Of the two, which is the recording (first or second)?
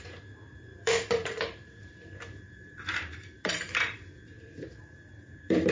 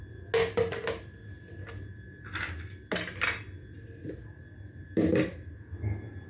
second